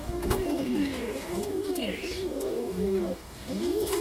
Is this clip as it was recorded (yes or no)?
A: no